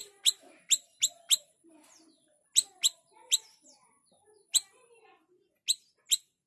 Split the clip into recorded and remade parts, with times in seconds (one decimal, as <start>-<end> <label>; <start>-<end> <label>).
0.0-6.5 recorded